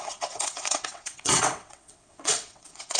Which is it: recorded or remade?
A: remade